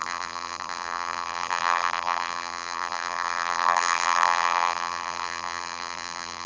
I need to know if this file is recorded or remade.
remade